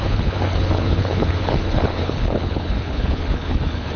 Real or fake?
fake